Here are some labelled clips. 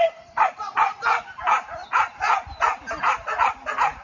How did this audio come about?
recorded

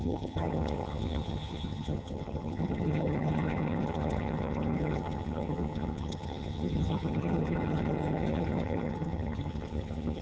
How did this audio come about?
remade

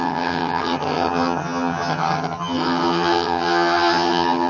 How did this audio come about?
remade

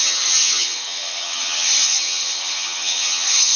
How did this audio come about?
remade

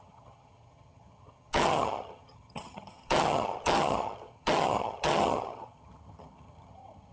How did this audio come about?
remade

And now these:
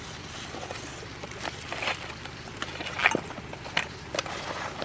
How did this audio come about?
recorded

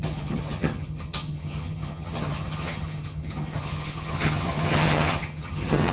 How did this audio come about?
remade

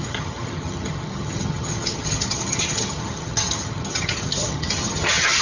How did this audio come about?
remade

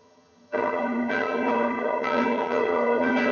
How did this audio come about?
remade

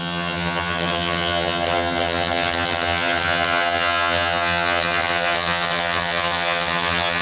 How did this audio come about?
remade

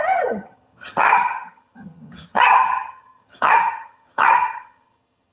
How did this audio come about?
remade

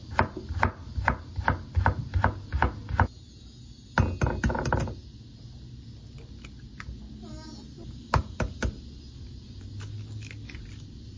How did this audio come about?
recorded